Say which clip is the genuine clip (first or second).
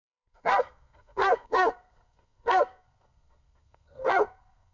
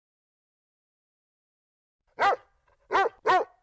second